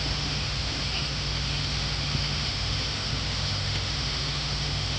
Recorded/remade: remade